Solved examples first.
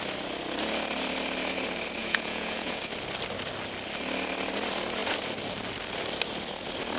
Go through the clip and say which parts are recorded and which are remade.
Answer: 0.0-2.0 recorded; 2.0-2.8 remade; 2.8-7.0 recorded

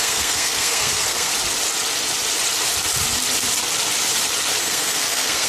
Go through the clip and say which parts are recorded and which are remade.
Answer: 0.0-1.3 remade; 1.3-4.6 recorded; 4.6-5.5 remade

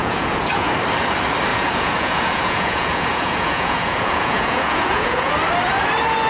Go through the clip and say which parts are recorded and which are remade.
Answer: 0.0-0.7 remade; 0.7-1.5 recorded; 1.5-5.3 remade; 5.3-6.3 recorded